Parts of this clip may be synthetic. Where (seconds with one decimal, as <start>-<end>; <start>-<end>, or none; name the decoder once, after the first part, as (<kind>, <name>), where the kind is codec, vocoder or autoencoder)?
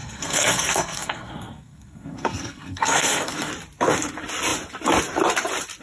0.0-3.5 (codec, SNAC)